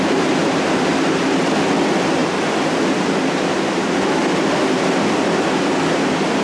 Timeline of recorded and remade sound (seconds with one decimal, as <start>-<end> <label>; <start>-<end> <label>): 0.0-6.4 recorded